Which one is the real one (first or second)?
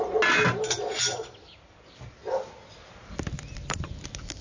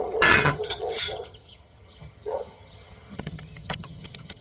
first